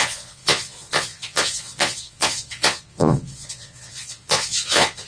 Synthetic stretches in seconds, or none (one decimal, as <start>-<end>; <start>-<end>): 0.0-5.1